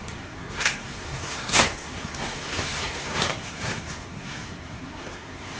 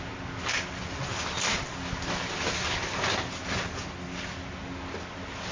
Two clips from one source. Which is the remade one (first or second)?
first